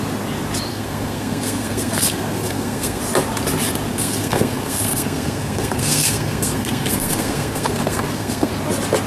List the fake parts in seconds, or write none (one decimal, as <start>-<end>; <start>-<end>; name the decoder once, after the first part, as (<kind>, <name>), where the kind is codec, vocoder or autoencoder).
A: 0.7-3.0 (codec, SNAC); 3.9-8.5